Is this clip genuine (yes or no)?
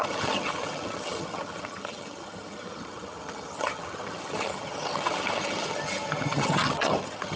no